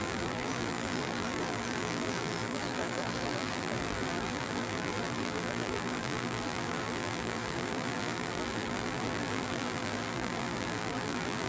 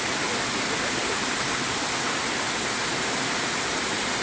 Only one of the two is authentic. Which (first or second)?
second